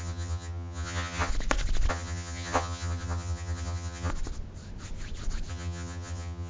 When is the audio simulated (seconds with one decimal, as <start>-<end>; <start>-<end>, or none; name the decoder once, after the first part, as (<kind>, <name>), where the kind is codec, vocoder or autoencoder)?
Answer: 0.0-1.3 (vocoder, HiFi-GAN); 1.9-4.1; 5.5-6.5